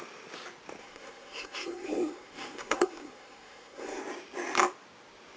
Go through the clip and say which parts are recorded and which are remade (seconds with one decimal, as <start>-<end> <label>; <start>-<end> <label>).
0.0-0.8 recorded; 0.8-4.0 remade; 4.0-5.4 recorded

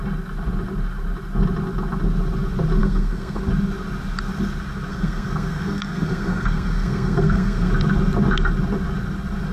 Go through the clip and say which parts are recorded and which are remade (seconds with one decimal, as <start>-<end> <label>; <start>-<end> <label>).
0.0-2.8 recorded; 2.8-3.4 remade; 3.4-4.9 recorded; 4.9-7.7 remade; 7.7-9.5 recorded

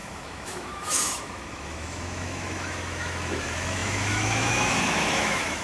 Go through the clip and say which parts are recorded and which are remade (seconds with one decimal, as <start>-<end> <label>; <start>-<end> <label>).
0.0-5.6 remade

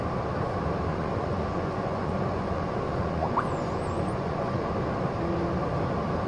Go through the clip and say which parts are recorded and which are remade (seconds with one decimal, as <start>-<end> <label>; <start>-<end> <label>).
0.0-0.9 recorded; 0.9-4.7 remade; 4.7-6.3 recorded

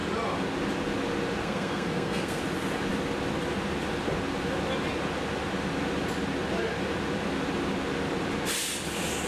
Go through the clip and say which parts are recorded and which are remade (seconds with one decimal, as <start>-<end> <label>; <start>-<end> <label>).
0.0-1.4 recorded; 1.4-2.4 remade; 2.4-9.3 recorded